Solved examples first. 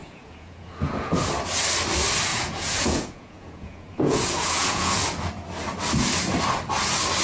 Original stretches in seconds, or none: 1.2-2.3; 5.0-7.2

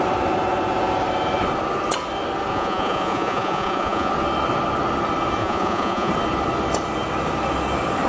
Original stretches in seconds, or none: 0.0-2.5; 4.1-5.4; 6.1-8.1

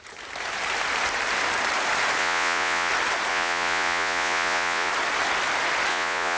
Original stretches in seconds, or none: 0.0-2.2; 2.9-3.3; 4.9-5.9